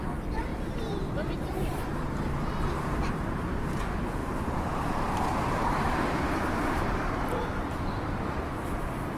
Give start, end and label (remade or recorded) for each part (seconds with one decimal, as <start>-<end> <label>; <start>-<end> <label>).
0.0-0.5 recorded; 0.5-3.8 remade; 3.8-4.2 recorded; 4.2-8.2 remade; 8.2-9.2 recorded